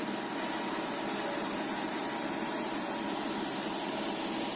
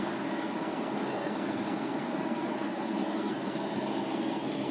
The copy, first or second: second